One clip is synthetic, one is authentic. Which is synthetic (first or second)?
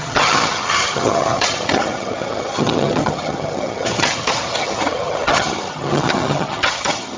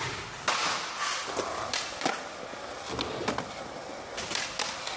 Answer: first